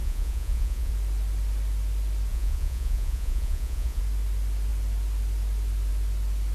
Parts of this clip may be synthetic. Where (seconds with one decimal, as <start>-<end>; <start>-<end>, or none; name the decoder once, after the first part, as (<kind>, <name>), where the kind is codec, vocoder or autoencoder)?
0.0-0.9 (vocoder, Vocos); 2.3-4.0